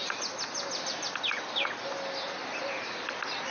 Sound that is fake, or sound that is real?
real